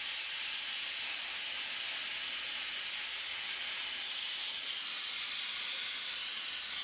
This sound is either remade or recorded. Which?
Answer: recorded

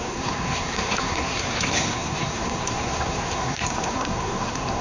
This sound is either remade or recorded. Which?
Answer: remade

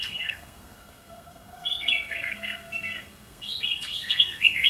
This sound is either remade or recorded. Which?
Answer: remade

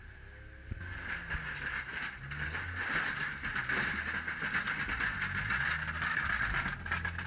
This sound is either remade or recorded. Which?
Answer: recorded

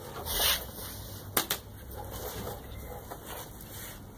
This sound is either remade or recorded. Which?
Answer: recorded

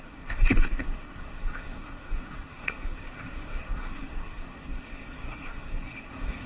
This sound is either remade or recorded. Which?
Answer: remade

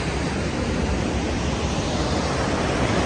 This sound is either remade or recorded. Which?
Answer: recorded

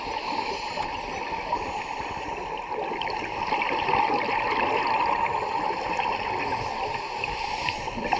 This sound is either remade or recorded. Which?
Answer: recorded